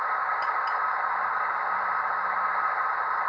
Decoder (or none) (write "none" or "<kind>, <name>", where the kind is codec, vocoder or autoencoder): none